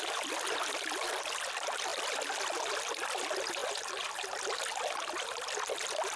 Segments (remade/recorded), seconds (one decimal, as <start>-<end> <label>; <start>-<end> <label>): 0.0-6.2 recorded